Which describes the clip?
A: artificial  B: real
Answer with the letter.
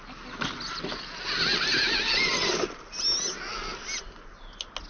B